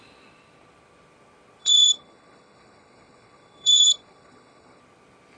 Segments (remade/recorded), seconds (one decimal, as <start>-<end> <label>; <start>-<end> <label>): 0.0-1.6 recorded; 1.6-4.8 remade; 4.8-5.4 recorded